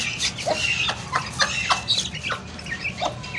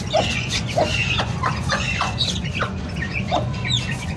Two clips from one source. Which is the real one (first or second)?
first